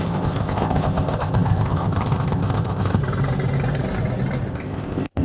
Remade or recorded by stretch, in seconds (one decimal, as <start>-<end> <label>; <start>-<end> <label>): 0.0-3.0 remade; 3.0-4.5 recorded; 4.5-5.2 remade